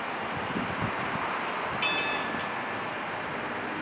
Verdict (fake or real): real